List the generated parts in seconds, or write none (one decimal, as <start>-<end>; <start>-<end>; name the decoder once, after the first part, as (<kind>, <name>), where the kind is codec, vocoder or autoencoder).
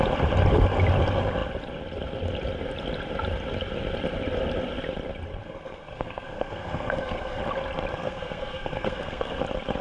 5.4-7.4 (codec, SNAC); 7.9-9.4